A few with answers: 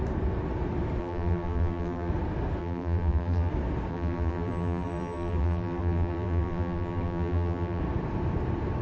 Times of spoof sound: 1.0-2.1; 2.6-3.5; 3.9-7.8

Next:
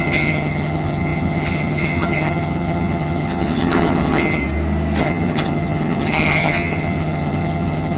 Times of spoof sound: 0.0-4.4; 5.0-8.0

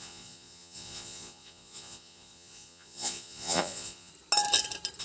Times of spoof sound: 0.0-4.1

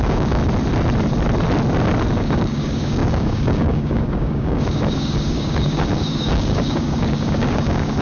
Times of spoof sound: 0.0-0.4; 2.1-8.0

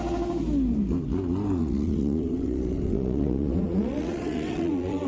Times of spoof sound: 1.6-5.1